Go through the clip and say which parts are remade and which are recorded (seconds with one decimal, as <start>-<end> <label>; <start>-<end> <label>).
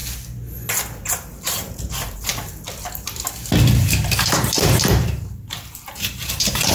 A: 0.0-1.1 recorded; 1.1-2.3 remade; 2.3-3.8 recorded; 3.8-6.7 remade